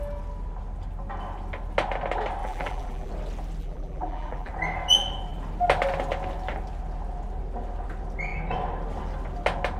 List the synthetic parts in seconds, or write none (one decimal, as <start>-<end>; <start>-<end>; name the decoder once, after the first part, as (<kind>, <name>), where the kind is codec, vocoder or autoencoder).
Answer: 2.4-3.1 (vocoder, BigVGAN v2); 3.6-4.5

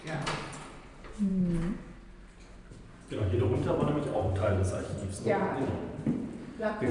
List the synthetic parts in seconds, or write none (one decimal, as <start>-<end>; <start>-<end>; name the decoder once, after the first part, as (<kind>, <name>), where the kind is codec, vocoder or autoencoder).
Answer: 0.0-1.3 (vocoder, BigVGAN v2); 4.2-6.9

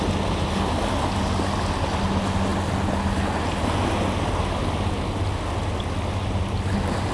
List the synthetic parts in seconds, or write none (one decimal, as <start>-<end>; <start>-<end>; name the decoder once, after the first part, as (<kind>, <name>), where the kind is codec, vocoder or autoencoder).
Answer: none

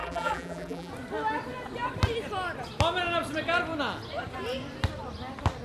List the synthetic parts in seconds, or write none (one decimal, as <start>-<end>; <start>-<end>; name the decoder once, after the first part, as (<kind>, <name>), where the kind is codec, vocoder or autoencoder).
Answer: 0.0-0.9 (vocoder, BigVGAN v2)

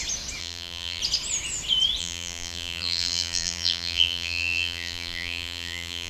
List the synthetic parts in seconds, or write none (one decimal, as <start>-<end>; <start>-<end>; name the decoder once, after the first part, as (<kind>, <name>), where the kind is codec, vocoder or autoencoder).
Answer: 0.4-1.0 (vocoder, BigVGAN v2); 2.0-6.1